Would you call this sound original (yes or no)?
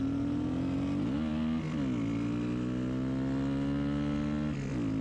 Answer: yes